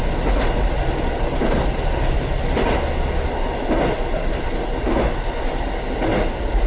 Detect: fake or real real